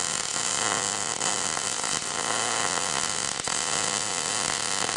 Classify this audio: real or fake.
real